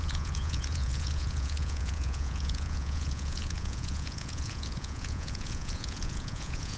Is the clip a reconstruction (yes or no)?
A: yes